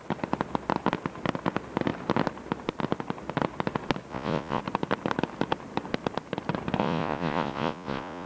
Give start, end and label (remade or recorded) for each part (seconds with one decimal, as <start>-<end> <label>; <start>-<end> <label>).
0.0-4.1 recorded; 4.1-4.6 remade; 4.6-6.8 recorded; 6.8-8.3 remade